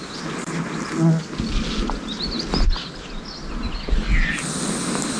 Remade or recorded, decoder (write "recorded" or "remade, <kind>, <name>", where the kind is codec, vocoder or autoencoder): recorded